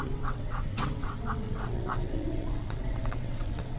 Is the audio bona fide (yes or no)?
no